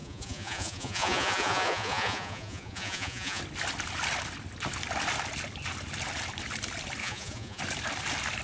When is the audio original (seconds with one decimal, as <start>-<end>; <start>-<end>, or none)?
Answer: 3.4-7.0; 7.6-8.4